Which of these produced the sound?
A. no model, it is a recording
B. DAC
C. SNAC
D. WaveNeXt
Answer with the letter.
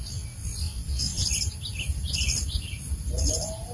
A